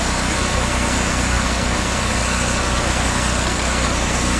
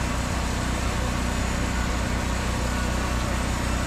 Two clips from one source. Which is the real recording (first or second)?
second